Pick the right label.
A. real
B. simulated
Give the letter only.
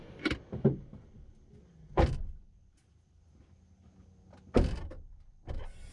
A